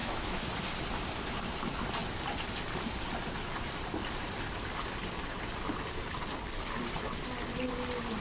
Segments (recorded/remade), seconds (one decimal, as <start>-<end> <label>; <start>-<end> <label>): 0.0-0.5 remade; 0.5-8.2 recorded